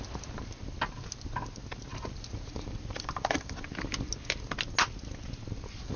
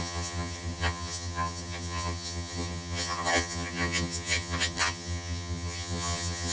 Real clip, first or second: first